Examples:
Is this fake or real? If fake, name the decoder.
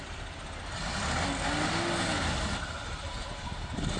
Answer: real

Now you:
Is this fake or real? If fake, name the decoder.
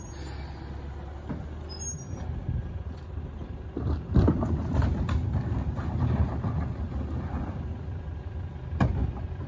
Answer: real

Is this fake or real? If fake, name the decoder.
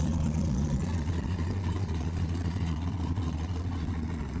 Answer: fake, vocoder, Vocos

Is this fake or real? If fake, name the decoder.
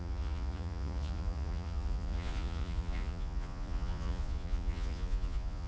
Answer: fake, vocoder, Vocos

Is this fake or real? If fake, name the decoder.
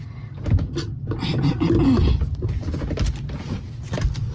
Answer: real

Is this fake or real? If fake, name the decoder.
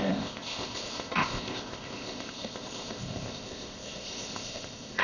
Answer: fake, codec, ZipCodec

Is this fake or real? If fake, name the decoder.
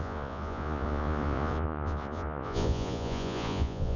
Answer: fake, vocoder, Vocos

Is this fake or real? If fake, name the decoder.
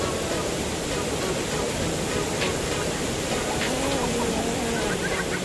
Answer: fake, vocoder, BigVGAN v2